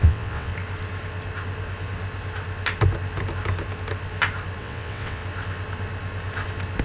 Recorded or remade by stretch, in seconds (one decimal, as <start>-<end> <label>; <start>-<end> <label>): 0.0-0.5 remade; 0.5-4.6 recorded; 4.6-5.2 remade; 5.2-6.8 recorded